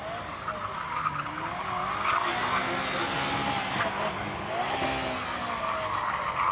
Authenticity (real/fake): real